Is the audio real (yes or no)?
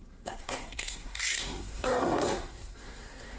no